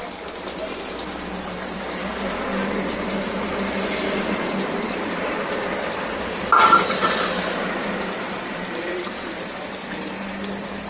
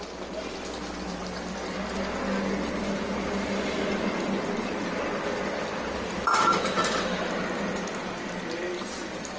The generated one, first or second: first